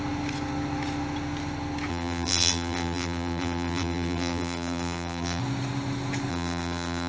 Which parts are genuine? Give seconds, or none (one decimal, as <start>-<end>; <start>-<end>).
0.0-1.9; 5.4-6.3